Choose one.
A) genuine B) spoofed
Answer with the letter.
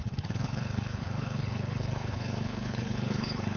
B